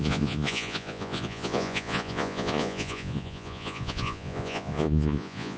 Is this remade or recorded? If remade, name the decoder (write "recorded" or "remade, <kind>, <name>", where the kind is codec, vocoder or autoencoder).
remade, vocoder, Vocos